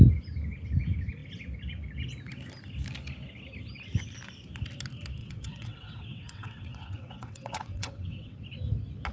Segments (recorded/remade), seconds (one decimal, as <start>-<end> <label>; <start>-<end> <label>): 0.0-5.2 recorded; 5.2-8.4 remade; 8.4-9.1 recorded